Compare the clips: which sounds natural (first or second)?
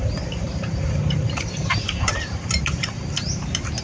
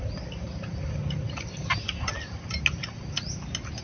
second